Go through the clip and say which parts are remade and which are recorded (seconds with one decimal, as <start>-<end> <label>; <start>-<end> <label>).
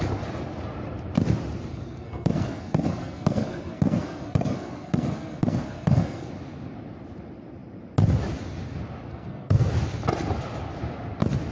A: 0.0-1.7 recorded; 1.7-6.3 remade; 6.3-9.1 recorded; 9.1-9.7 remade; 9.7-11.5 recorded